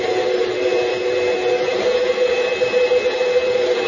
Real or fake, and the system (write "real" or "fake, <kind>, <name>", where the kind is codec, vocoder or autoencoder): real